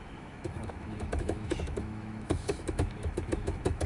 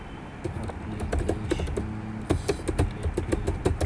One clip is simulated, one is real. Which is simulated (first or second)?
first